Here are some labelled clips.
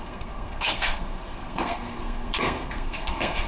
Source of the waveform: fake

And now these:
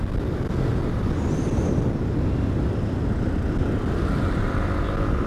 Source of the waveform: real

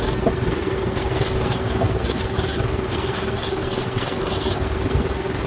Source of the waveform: fake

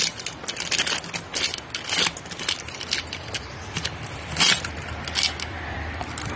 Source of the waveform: real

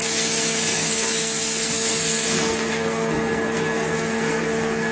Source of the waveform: fake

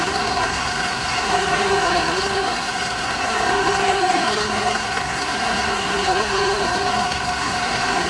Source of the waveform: fake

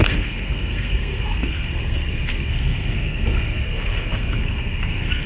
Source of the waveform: fake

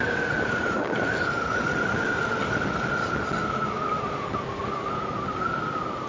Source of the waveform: real